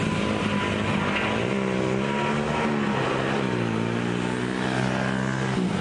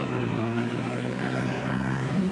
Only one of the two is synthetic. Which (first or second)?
second